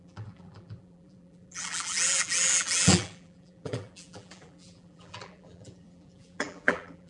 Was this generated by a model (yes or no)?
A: yes